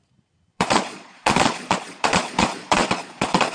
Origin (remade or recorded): remade